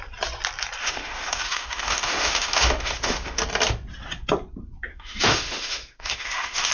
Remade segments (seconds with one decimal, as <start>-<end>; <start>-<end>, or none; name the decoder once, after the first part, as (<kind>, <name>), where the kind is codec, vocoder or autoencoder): 0.8-3.4 (autoencoder, DAC-VAE); 4.9-6.7